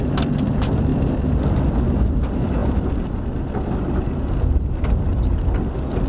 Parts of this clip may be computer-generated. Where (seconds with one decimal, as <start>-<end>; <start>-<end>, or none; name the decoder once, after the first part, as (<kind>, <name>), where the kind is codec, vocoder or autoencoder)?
none